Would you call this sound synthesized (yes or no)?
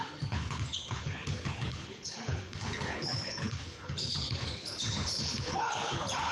yes